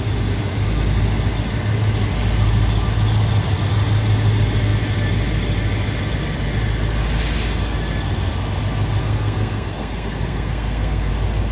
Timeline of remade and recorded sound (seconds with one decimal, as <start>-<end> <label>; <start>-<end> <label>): 0.0-9.0 recorded; 9.0-11.1 remade; 11.1-11.5 recorded